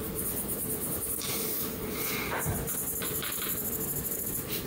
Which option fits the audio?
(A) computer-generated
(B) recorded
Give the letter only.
B